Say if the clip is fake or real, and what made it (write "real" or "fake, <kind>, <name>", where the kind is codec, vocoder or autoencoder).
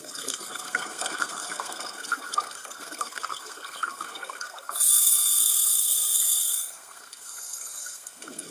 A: fake, codec, SNAC